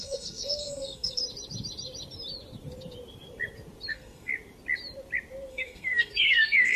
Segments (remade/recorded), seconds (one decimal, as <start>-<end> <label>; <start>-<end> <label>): 0.0-1.2 remade; 1.2-3.9 recorded; 3.9-4.3 remade; 4.3-5.5 recorded; 5.5-6.8 remade